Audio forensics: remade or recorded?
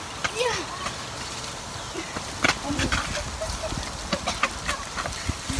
recorded